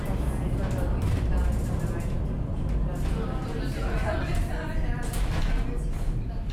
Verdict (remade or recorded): recorded